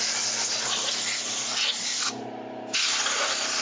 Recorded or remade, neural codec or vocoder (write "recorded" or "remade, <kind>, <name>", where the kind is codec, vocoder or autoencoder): recorded